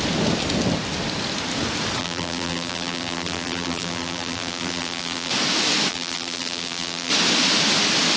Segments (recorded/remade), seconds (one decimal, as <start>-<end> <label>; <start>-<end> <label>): 0.0-2.0 recorded; 2.0-5.3 remade; 5.3-5.9 recorded; 5.9-7.1 remade; 7.1-8.2 recorded